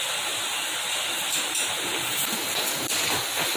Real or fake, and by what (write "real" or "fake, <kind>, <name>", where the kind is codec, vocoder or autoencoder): real